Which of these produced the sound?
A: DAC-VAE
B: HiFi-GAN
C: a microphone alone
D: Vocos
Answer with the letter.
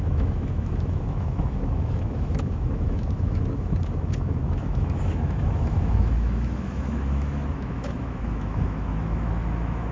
A